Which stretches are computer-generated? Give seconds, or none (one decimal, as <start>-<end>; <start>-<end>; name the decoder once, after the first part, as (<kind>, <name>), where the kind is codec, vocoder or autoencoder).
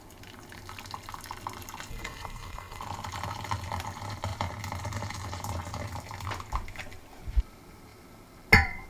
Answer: 1.9-2.8 (codec, SNAC)